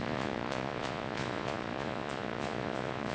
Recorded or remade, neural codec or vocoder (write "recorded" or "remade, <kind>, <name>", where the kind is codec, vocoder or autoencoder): remade, vocoder, Vocos